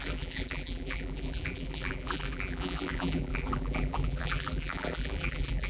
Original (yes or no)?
no